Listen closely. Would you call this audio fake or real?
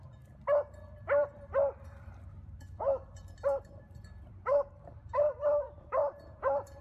fake